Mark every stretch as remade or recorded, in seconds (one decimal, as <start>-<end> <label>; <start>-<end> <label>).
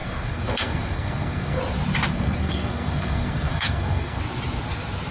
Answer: 0.0-1.6 remade; 1.6-2.1 recorded; 2.1-4.2 remade; 4.2-5.1 recorded